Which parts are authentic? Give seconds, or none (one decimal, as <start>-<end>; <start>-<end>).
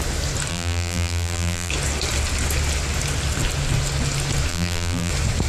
0.0-0.5; 1.7-4.5; 5.1-5.5